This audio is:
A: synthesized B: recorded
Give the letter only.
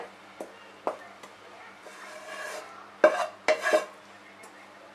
B